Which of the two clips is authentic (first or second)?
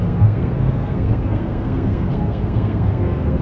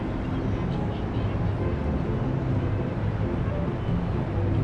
second